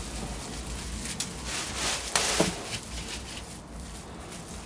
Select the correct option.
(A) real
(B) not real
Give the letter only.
A